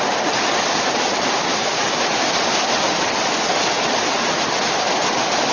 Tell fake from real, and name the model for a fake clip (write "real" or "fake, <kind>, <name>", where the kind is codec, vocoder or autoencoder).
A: real